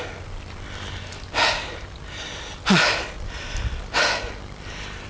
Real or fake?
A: real